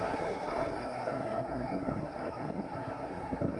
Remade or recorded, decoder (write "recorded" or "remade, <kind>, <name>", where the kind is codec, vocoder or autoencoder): remade, codec, SNAC